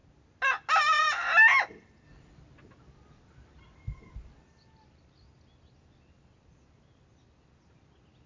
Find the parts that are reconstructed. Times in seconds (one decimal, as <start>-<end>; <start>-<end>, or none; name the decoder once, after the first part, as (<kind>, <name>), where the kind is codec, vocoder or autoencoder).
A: none